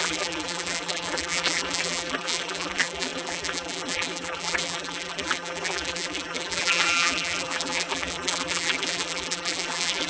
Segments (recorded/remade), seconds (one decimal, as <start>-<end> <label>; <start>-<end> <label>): 0.0-10.1 remade